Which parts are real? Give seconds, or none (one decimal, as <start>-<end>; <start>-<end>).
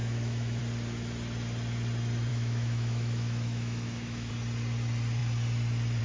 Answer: 0.6-2.3; 4.3-6.0